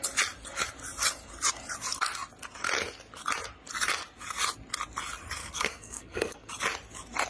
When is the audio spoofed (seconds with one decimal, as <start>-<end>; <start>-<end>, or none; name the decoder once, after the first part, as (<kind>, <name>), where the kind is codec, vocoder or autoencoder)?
5.4-6.5 (codec, SNAC)